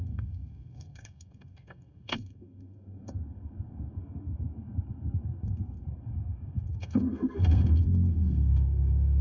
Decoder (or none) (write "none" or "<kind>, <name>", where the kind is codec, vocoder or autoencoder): codec, SNAC